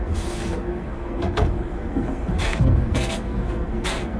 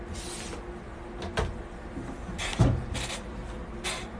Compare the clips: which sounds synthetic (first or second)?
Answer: first